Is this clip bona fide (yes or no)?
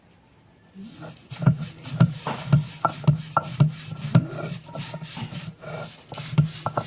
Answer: yes